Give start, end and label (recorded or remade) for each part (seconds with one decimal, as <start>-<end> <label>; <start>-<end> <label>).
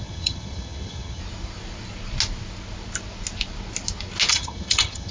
0.0-1.2 remade; 1.2-4.3 recorded; 4.3-5.1 remade